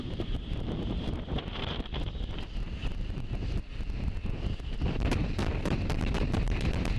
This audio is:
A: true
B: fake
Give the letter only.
B